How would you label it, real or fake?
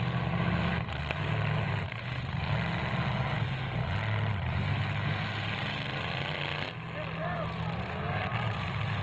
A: real